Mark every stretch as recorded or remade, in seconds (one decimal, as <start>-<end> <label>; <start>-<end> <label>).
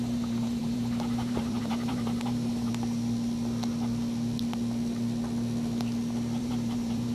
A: 0.0-2.7 remade; 2.7-6.4 recorded; 6.4-7.1 remade